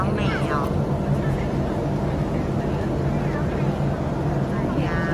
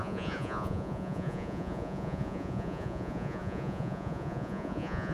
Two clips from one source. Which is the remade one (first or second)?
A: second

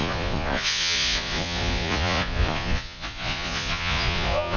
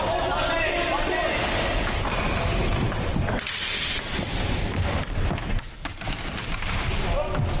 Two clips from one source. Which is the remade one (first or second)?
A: first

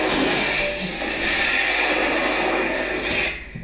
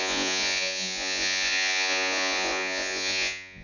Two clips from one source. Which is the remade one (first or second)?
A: second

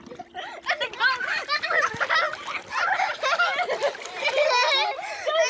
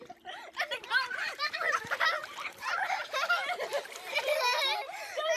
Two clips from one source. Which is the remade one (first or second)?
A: second